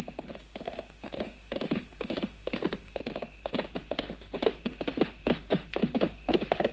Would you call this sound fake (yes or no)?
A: yes